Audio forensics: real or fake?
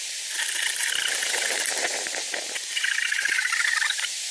fake